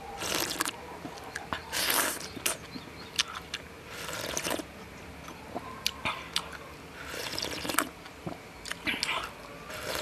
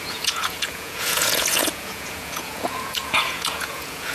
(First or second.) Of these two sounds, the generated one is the second